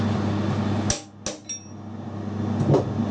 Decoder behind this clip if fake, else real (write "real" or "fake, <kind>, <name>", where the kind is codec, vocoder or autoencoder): real